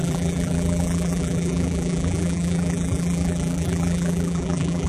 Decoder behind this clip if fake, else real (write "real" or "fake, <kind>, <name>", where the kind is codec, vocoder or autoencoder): fake, vocoder, BigVGAN v2